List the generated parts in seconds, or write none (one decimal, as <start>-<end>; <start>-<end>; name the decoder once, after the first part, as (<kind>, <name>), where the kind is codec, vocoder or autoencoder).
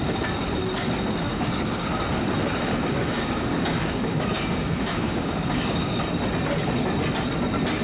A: 1.3-1.9 (codec, DAC); 2.7-6.0